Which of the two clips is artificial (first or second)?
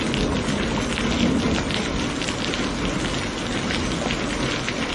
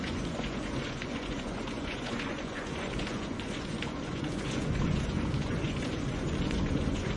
second